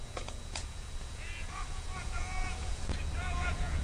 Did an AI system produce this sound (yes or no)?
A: yes